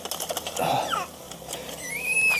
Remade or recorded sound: recorded